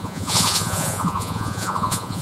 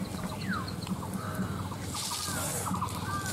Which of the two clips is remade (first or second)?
first